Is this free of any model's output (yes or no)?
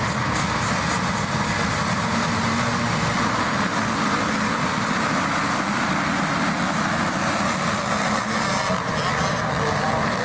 yes